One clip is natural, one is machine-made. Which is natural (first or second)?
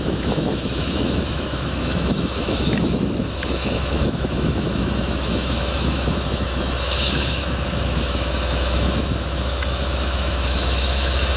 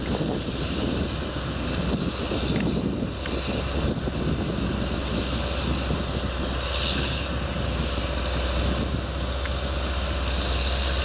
second